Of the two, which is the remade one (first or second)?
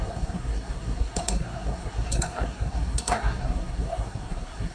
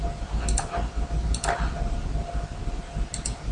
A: first